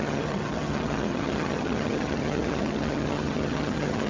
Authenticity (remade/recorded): remade